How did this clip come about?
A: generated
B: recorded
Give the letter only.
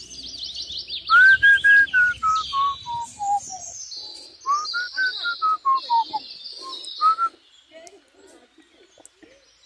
B